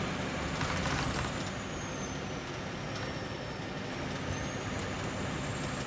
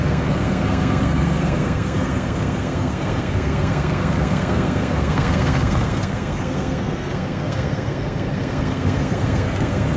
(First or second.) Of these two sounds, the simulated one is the second